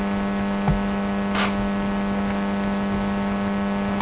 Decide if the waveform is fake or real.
real